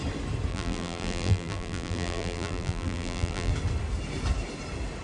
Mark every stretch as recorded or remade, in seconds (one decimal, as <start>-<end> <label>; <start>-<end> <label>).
0.0-0.5 recorded; 0.5-3.5 remade; 3.5-5.0 recorded